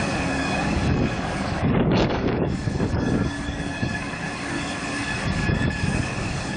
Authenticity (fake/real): fake